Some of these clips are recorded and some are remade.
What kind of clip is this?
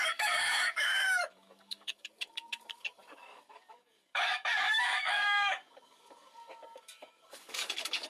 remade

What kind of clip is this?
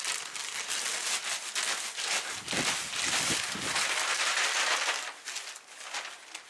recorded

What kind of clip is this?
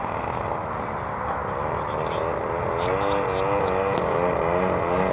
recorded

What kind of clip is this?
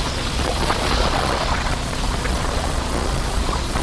remade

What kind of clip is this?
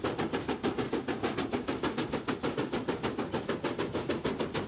recorded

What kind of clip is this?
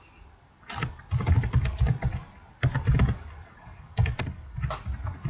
recorded